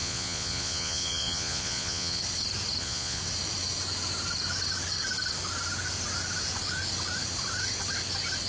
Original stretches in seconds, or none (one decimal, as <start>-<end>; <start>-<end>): 2.2-2.8; 3.2-8.5